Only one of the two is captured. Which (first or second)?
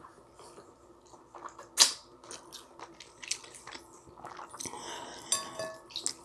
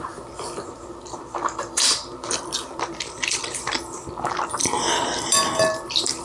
first